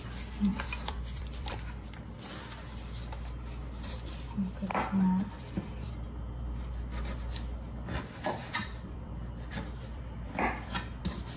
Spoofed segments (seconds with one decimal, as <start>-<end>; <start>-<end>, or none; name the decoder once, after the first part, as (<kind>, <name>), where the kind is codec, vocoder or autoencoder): 0.5-2.0 (vocoder, BigVGAN v2); 8.4-11.0